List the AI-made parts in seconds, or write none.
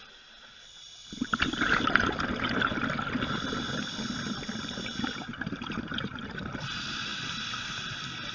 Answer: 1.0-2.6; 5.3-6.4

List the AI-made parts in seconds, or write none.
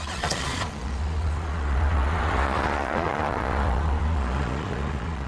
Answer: 0.0-5.3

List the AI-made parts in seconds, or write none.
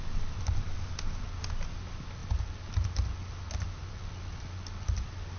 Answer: none